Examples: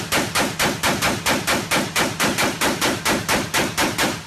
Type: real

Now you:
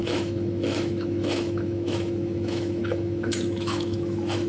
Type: fake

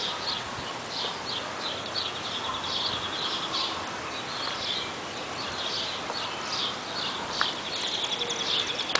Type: real